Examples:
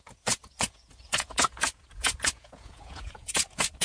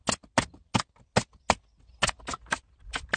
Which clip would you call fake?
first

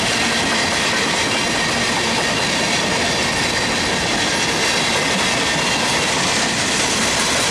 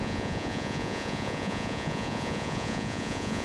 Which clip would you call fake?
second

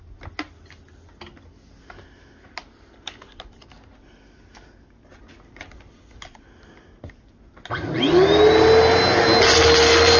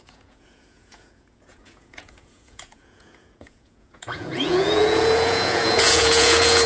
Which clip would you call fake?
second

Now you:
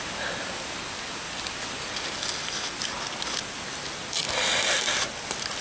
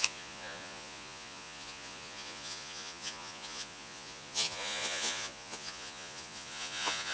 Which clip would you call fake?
second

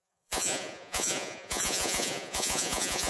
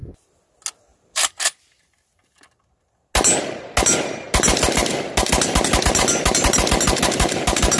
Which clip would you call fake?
first